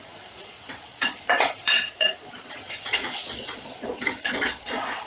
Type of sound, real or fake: fake